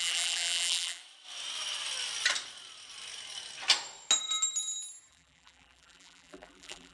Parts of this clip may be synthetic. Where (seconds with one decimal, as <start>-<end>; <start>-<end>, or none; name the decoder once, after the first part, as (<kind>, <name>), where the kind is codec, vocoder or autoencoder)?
0.0-1.0 (vocoder, BigVGAN v2); 5.1-6.9